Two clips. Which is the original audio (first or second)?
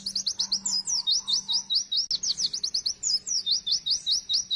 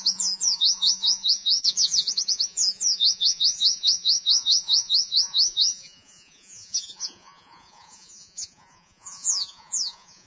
first